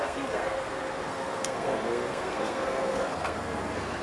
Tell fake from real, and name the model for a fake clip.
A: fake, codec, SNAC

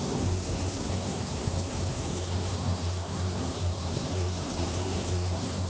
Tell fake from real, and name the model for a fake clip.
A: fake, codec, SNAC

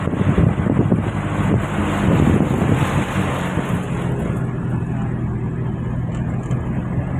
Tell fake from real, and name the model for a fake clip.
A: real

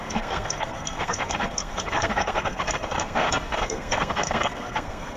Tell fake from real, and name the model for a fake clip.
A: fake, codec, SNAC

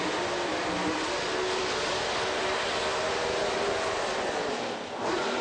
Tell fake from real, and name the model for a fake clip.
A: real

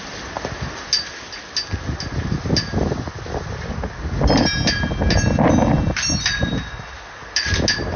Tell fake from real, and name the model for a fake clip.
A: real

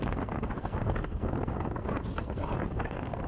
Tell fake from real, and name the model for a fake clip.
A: fake, codec, SNAC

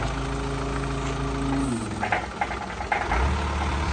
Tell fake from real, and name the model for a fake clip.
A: real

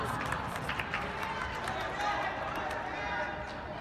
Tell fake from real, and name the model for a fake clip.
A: real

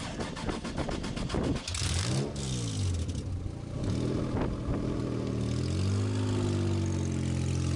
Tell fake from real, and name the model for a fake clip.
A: real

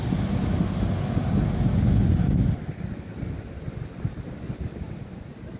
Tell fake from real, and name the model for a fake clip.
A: real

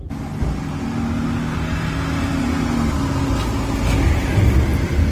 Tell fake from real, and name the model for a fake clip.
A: real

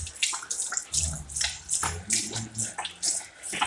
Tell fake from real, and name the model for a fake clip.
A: real